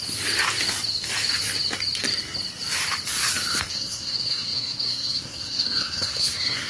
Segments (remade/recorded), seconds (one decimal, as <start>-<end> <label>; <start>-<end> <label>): 0.0-3.7 recorded; 3.7-6.7 remade